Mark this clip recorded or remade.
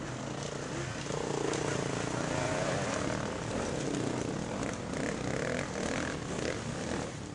recorded